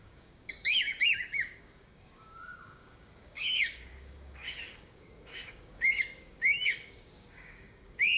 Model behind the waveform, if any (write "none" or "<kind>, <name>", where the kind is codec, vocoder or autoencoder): codec, DAC